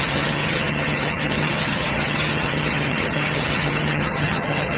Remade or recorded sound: remade